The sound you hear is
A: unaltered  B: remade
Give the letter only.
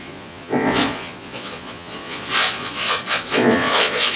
B